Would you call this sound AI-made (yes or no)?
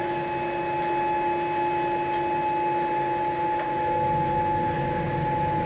no